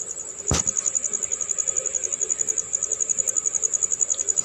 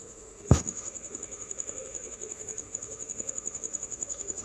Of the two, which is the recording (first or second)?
first